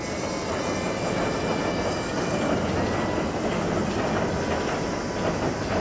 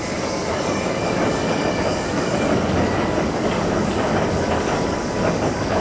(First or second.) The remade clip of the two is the second